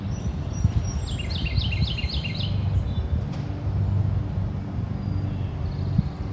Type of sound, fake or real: real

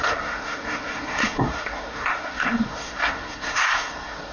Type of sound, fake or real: fake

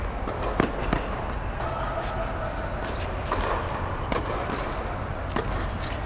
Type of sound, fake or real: real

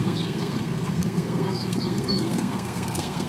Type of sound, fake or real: fake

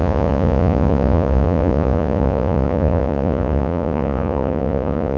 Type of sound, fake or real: fake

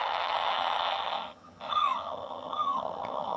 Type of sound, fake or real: fake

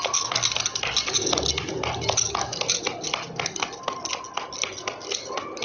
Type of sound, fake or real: real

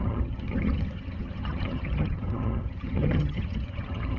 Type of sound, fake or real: fake